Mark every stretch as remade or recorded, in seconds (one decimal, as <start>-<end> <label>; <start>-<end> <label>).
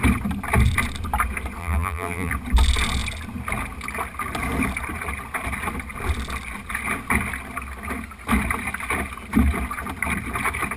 0.0-1.6 recorded; 1.6-2.3 remade; 2.3-10.8 recorded